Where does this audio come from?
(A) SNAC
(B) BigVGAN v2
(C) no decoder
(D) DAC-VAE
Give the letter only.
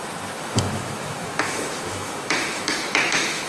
D